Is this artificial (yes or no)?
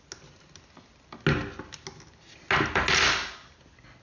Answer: no